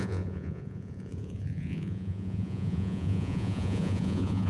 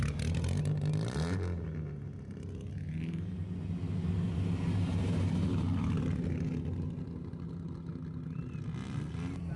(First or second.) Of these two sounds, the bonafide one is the second